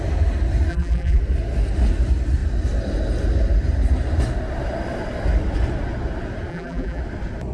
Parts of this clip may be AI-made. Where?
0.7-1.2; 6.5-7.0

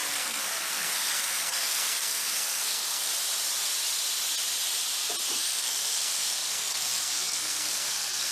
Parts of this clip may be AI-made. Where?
0.0-3.1; 5.3-8.3